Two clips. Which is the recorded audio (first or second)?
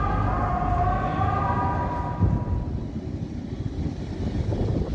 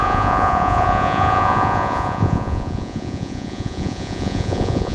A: first